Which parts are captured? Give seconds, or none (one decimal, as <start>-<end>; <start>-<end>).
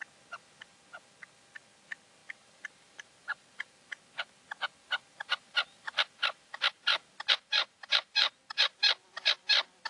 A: 0.0-2.2; 3.7-5.4; 8.3-9.9